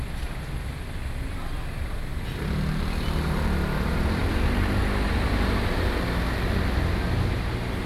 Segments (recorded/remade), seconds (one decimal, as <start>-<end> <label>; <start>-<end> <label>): 0.0-7.9 recorded